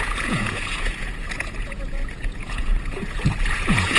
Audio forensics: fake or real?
fake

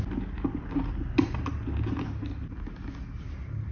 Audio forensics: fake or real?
real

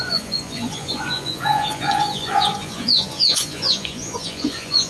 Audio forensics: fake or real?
fake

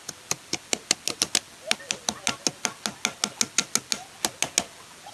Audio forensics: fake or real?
real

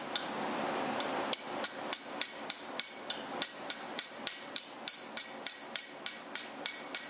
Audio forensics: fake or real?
fake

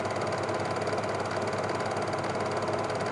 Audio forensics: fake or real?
real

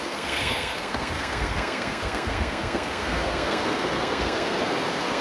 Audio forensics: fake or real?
fake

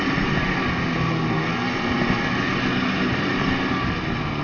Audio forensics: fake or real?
real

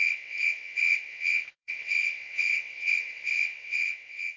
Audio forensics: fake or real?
fake